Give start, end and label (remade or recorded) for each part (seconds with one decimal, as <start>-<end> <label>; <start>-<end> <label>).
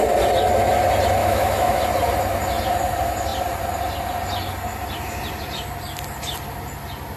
0.0-1.2 recorded; 1.2-1.8 remade; 1.8-7.2 recorded